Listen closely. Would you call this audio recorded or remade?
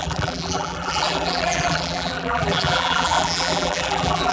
remade